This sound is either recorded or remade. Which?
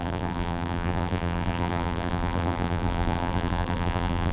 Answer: remade